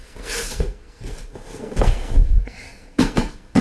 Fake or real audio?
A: fake